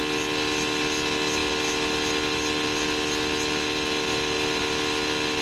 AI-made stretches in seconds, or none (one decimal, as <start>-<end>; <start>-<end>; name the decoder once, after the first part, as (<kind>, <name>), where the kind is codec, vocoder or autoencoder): none